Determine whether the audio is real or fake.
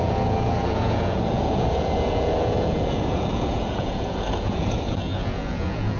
fake